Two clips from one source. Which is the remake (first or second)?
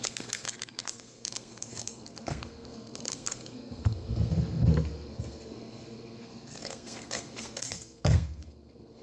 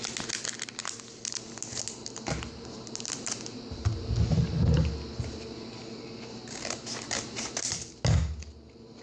first